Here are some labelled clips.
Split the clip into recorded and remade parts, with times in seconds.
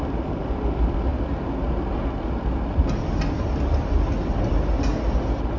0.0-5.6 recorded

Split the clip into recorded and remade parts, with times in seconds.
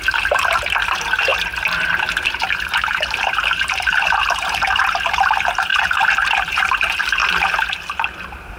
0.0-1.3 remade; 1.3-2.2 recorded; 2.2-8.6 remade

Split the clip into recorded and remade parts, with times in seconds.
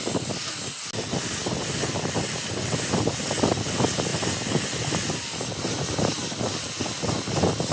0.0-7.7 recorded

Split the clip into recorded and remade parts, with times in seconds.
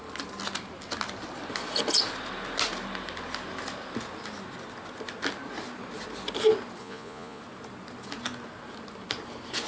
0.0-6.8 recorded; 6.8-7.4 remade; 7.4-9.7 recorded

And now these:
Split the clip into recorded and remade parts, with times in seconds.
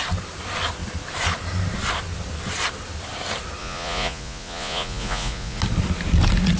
0.0-3.6 recorded; 3.6-5.6 remade; 5.6-6.6 recorded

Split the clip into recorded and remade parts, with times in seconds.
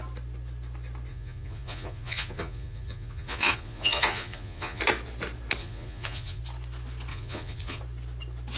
0.0-1.1 recorded; 1.1-4.8 remade; 4.8-5.6 recorded; 5.6-6.4 remade; 6.4-7.1 recorded; 7.1-7.8 remade; 7.8-8.6 recorded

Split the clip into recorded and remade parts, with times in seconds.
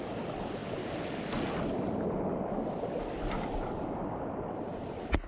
0.0-0.6 remade; 0.6-3.8 recorded; 3.8-5.3 remade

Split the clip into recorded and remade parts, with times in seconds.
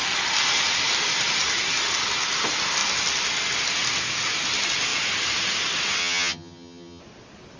0.0-6.0 recorded; 6.0-7.0 remade; 7.0-7.6 recorded